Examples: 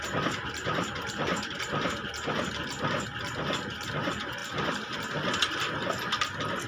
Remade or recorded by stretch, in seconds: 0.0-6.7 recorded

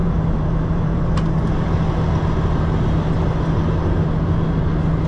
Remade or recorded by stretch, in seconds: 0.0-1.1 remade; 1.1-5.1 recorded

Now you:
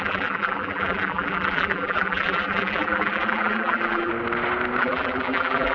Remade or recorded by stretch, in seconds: 0.0-4.1 remade; 4.1-4.8 recorded; 4.8-5.7 remade

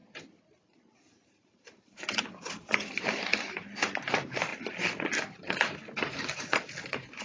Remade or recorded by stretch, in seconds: 0.0-4.5 remade; 4.5-5.2 recorded; 5.2-7.2 remade